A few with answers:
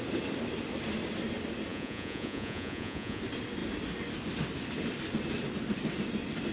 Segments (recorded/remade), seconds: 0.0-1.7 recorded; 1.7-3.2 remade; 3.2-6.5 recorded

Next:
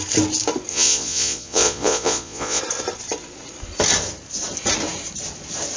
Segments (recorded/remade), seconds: 0.0-0.7 recorded; 0.7-2.6 remade; 2.6-5.8 recorded